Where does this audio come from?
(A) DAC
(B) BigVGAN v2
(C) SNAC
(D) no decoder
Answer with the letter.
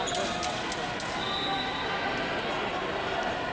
D